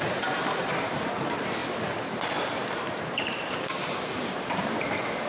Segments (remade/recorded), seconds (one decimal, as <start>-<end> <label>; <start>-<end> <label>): 0.0-1.6 remade; 1.6-3.1 recorded; 3.1-4.2 remade; 4.2-5.3 recorded